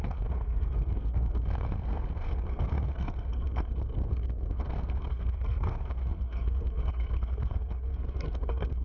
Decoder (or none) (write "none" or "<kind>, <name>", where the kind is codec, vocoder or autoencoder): codec, SNAC